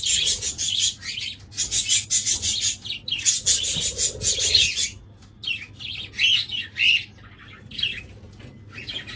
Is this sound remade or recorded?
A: recorded